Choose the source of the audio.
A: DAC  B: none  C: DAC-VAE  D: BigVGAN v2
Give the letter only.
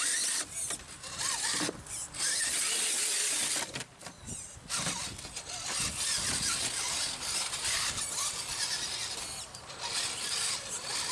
B